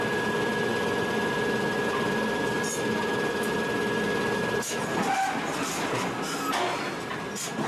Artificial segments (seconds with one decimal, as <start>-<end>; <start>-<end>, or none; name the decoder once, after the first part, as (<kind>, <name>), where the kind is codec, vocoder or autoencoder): none